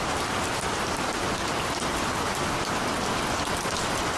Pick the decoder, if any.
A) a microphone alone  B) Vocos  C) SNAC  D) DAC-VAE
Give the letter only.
A